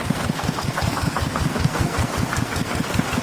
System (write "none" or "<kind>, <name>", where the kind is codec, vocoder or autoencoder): codec, SNAC